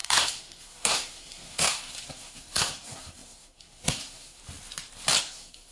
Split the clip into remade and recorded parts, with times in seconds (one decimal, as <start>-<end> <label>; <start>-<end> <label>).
0.0-4.4 remade; 4.4-5.2 recorded; 5.2-5.7 remade